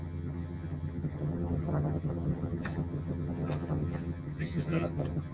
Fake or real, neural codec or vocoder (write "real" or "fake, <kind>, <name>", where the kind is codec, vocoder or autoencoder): fake, vocoder, HiFi-GAN